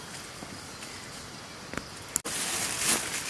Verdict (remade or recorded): recorded